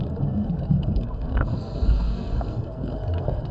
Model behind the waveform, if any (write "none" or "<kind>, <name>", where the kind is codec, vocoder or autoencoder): codec, SNAC